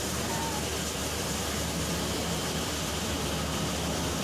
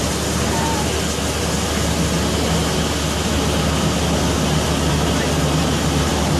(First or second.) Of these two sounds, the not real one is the first